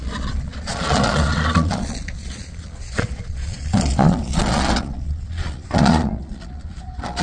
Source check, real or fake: fake